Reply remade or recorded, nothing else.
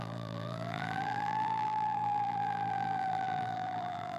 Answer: remade